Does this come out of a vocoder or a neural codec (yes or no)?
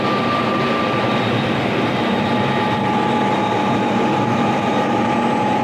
no